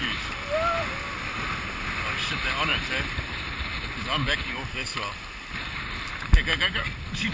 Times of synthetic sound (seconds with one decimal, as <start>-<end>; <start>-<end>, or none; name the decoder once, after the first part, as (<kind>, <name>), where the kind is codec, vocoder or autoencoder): none